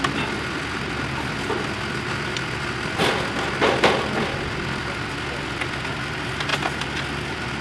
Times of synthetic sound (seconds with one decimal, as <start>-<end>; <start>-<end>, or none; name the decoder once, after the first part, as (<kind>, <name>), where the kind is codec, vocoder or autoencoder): none